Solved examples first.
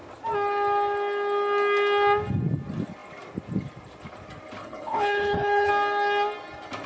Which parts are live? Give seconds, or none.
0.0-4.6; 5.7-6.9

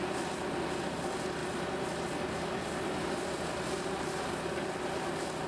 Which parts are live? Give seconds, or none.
0.0-5.5

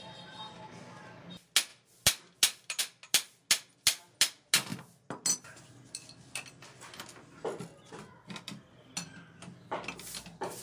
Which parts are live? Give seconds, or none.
0.0-10.6

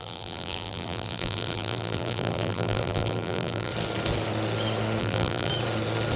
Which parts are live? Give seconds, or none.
3.7-5.0; 5.5-6.2

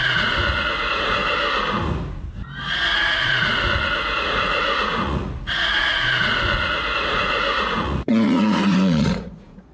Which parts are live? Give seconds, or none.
1.2-3.2

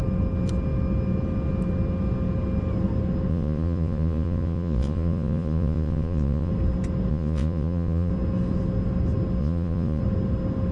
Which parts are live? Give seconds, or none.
0.0-3.3; 6.5-7.1; 8.1-9.4; 10.0-10.7

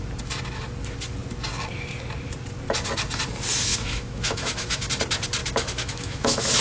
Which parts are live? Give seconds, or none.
0.0-3.7; 4.9-5.4

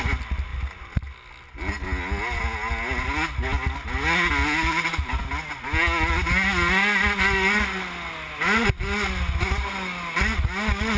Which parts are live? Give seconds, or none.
0.0-11.0